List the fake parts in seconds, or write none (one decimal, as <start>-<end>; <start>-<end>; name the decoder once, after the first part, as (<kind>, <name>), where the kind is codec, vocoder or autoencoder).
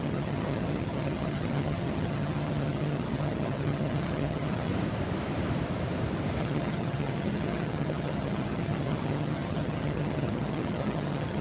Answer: 0.0-4.7 (vocoder, HiFi-GAN); 6.4-11.4